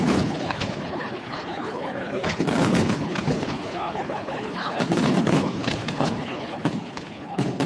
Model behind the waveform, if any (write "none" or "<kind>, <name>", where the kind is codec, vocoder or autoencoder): codec, HILCodec